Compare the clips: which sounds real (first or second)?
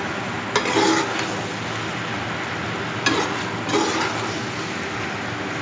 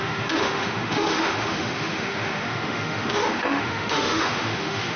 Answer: first